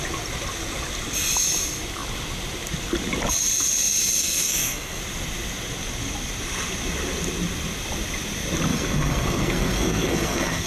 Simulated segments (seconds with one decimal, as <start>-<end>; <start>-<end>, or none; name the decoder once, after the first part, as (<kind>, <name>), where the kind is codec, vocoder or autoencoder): 4.2-5.0 (codec, SNAC); 8.7-10.7